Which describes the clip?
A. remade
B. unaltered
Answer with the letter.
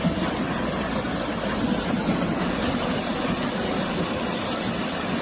B